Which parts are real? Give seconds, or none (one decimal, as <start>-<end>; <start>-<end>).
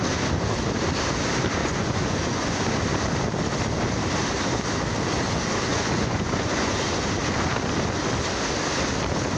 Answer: 0.0-1.6; 2.6-5.7; 6.7-9.4